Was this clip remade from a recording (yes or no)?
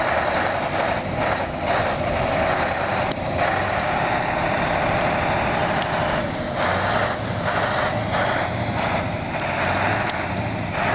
no